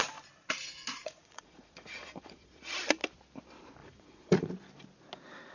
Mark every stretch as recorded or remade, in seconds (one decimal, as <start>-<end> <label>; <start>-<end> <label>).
0.0-1.0 recorded; 1.0-2.6 remade; 2.6-3.8 recorded; 3.8-4.5 remade; 4.5-5.5 recorded